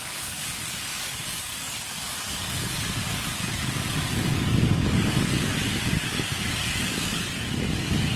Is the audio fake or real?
fake